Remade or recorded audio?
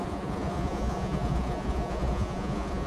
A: remade